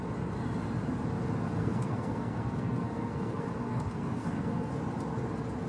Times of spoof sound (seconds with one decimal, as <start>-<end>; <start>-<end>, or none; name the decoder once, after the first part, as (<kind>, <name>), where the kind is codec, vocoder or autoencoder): 1.6-4.7 (codec, SNAC)